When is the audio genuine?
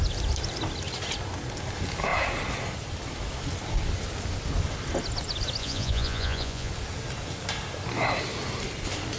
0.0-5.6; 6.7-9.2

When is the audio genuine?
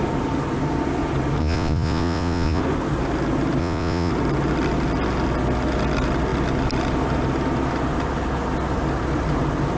0.0-1.4; 2.6-3.6; 4.1-9.8